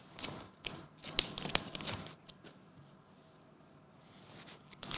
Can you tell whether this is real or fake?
real